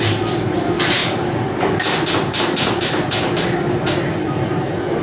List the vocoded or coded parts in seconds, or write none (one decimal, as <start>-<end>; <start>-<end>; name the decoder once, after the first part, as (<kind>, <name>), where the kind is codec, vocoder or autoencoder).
none